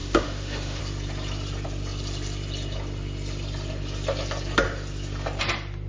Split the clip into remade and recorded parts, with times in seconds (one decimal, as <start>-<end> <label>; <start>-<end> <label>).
0.0-0.8 remade; 0.8-5.9 recorded